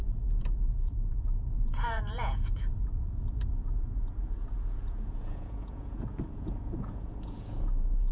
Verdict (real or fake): fake